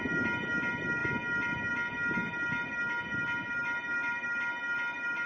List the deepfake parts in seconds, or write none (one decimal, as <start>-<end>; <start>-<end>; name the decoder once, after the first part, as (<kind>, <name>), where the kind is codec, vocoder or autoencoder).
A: none